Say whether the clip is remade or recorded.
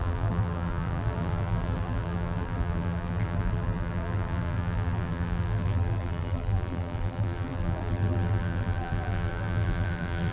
remade